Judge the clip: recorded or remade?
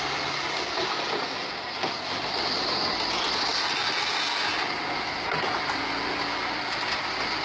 recorded